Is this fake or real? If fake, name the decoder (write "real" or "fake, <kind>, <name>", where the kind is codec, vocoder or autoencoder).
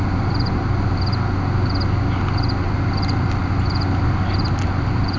real